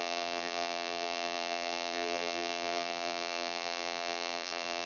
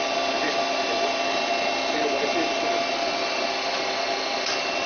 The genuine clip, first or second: second